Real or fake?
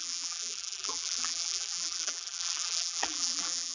fake